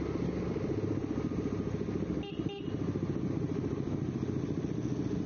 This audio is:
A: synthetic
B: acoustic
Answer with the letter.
B